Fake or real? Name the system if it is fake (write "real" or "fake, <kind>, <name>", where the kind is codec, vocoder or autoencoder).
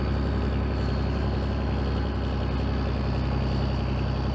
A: real